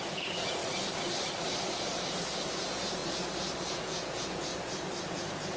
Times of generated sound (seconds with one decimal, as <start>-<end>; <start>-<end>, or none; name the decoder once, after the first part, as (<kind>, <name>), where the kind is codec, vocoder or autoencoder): 0.0-0.6 (vocoder, Vocos); 2.6-3.0; 3.7-4.5; 5.0-5.6